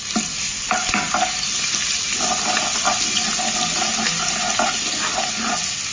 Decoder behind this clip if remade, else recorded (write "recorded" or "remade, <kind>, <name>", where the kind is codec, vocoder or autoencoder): recorded